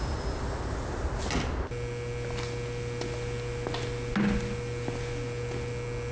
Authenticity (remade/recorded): recorded